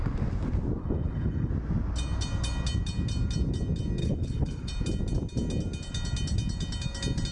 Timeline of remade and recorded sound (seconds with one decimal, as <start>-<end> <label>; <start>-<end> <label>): 0.0-0.8 recorded; 0.8-1.5 remade; 1.5-4.0 recorded; 4.0-4.7 remade; 4.7-7.3 recorded